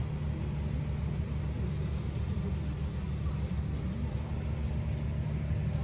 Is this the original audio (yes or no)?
yes